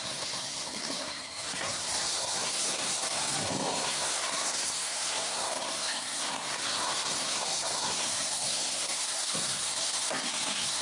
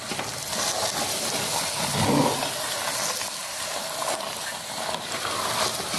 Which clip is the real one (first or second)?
second